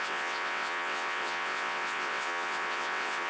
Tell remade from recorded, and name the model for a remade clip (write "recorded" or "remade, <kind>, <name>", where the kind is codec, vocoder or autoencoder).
remade, vocoder, WaveNeXt